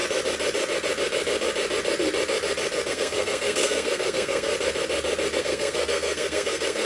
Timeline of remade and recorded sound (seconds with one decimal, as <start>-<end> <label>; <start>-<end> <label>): 0.0-2.9 recorded; 2.9-4.5 remade; 4.5-5.4 recorded; 5.4-6.9 remade